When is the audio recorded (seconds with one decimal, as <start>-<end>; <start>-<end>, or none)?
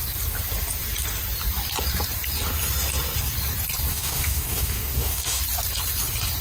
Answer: 0.0-3.9; 5.4-6.4